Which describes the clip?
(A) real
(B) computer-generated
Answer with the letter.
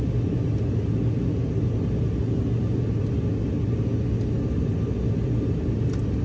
A